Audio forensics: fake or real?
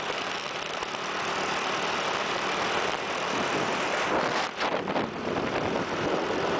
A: fake